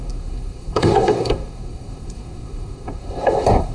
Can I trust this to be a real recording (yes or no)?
no